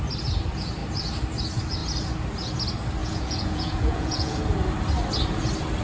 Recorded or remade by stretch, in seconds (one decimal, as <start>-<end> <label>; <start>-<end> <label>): 0.0-3.0 recorded; 3.0-4.4 remade; 4.4-5.8 recorded